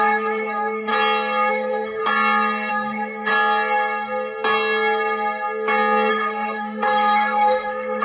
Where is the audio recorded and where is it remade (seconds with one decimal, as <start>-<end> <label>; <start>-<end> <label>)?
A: 0.0-0.9 remade; 0.9-1.5 recorded; 1.5-2.0 remade; 2.0-2.7 recorded; 2.7-3.3 remade; 3.3-6.1 recorded; 6.1-8.0 remade